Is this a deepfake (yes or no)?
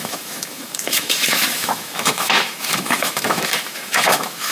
yes